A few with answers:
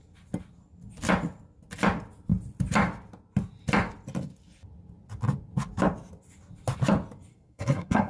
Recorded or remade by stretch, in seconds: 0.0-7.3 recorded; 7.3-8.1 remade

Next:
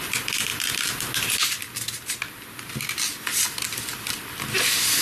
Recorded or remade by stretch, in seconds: 0.0-5.0 recorded

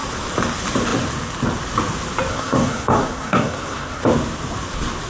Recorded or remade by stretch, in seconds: 0.0-2.3 recorded; 2.3-4.0 remade; 4.0-5.1 recorded

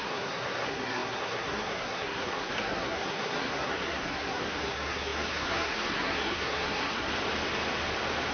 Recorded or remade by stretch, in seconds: 0.0-7.1 remade; 7.1-8.3 recorded

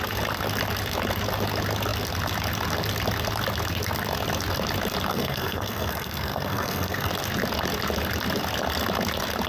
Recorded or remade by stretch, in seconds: 0.0-5.1 recorded; 5.1-7.1 remade; 7.1-9.5 recorded

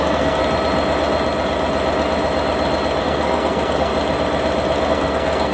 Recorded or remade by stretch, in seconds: 0.0-0.4 remade; 0.4-3.0 recorded; 3.0-3.9 remade; 3.9-4.9 recorded; 4.9-5.5 remade

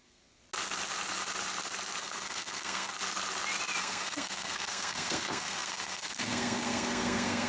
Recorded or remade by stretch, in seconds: 0.0-0.4 remade; 0.4-2.0 recorded; 2.0-2.9 remade; 2.9-3.8 recorded; 3.8-7.5 remade